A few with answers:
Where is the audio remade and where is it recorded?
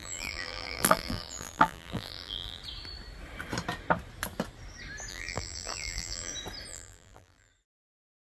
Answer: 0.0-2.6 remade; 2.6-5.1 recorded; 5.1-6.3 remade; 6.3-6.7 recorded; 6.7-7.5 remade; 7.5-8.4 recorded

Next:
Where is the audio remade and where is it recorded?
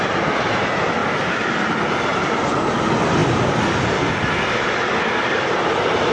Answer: 0.0-6.1 recorded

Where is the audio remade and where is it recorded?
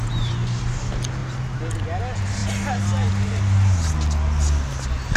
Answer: 0.0-5.2 recorded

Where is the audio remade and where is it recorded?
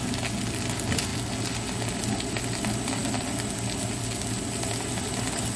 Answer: 0.0-5.6 recorded